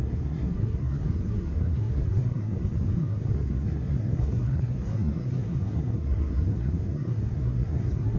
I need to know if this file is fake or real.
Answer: fake